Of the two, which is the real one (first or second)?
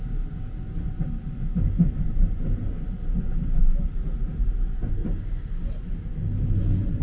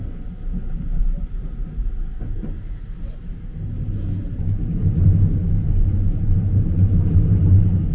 first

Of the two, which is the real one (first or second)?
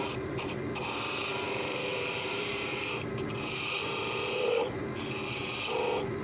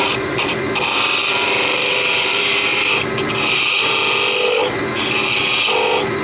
second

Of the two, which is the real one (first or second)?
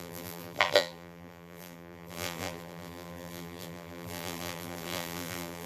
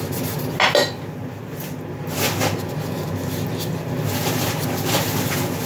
second